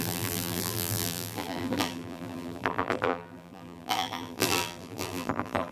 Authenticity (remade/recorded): remade